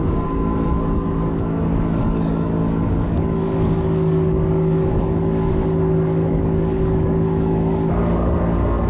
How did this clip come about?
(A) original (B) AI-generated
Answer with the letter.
B